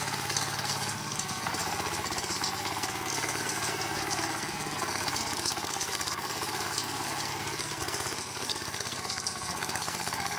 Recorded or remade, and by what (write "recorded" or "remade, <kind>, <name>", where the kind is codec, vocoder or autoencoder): remade, codec, SNAC